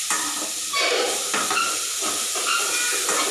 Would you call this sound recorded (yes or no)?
yes